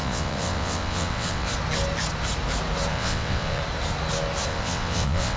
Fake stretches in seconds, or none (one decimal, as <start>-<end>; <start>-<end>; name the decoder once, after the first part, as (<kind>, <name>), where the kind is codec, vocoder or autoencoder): 0.0-1.5 (vocoder, WaveNeXt); 2.9-3.6; 4.5-5.4